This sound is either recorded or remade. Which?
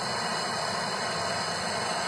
recorded